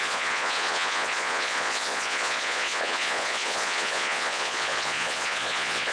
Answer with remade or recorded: remade